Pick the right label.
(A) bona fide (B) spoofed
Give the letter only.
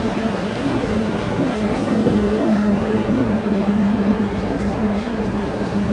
B